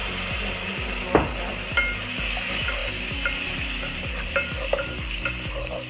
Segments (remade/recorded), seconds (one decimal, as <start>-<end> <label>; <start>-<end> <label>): 0.0-5.9 recorded